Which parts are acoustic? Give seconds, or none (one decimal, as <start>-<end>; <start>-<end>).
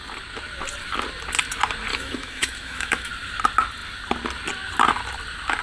0.0-1.9; 3.1-5.6